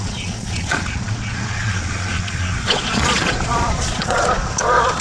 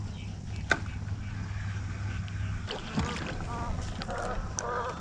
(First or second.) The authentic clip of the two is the second